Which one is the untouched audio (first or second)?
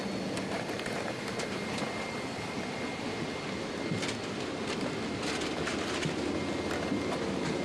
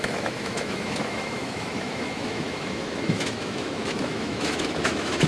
first